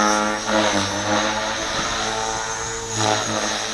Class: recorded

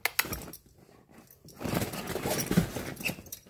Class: recorded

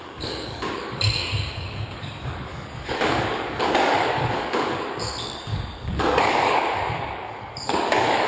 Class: remade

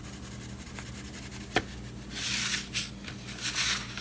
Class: recorded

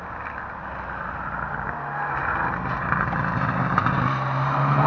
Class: recorded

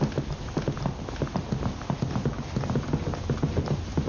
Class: recorded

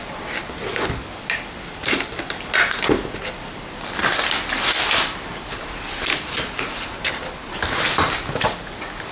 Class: recorded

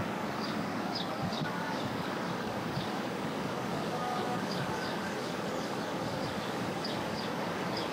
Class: remade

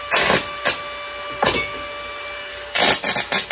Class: recorded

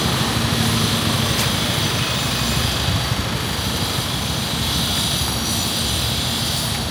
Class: recorded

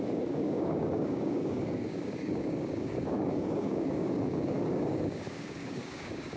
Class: remade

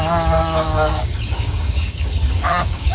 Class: remade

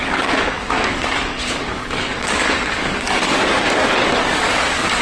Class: remade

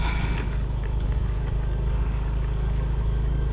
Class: remade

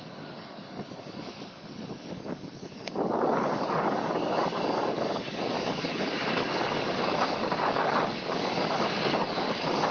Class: remade